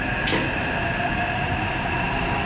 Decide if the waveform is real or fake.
real